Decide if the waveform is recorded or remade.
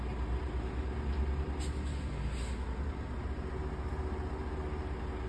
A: recorded